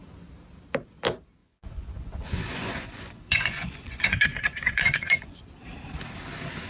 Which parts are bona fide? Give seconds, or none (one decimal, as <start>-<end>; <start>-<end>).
0.0-1.4; 5.4-6.7